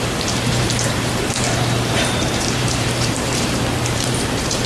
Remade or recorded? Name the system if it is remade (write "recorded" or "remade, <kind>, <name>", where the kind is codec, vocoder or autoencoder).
remade, vocoder, BigVGAN v2